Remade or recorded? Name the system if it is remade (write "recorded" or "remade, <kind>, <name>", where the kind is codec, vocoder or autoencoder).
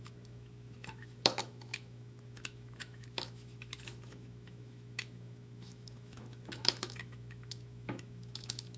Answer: remade, autoencoder, DAC-VAE